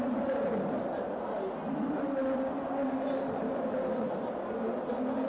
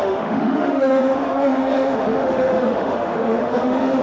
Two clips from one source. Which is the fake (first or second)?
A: second